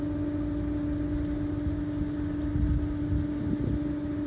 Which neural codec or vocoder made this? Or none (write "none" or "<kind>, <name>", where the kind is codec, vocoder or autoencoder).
none